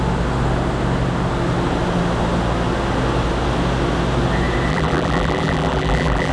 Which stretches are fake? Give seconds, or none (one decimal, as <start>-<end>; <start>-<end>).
4.7-6.3